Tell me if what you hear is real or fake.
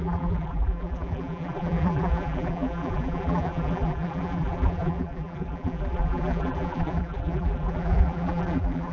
fake